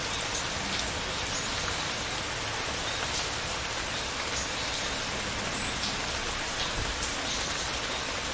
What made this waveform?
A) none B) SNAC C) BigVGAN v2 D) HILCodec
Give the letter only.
A